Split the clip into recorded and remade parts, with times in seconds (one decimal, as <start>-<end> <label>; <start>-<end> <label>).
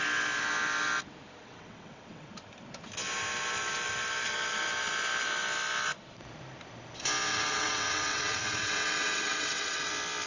0.0-1.4 recorded; 1.4-2.3 remade; 2.3-7.3 recorded; 7.3-9.9 remade; 9.9-10.3 recorded